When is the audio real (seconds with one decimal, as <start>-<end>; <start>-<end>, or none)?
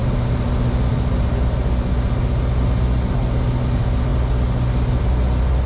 0.0-5.7